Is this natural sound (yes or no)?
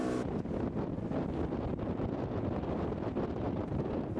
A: yes